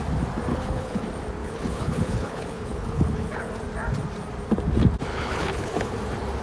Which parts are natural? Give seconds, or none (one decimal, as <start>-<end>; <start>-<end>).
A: 0.0-0.5; 1.0-1.4; 3.5-5.1; 5.9-6.4